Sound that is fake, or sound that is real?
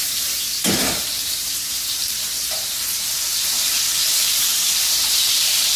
fake